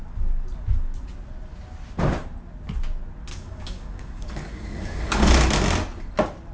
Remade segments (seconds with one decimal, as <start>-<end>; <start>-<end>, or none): 3.3-5.3